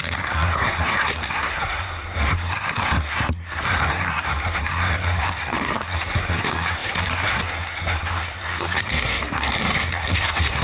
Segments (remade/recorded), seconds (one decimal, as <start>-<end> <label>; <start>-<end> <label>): 0.0-10.6 remade